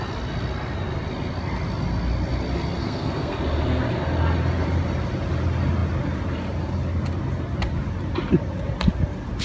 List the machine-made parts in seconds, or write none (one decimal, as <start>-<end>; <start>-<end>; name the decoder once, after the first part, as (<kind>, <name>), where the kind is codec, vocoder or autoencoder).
2.8-3.4 (codec, SNAC)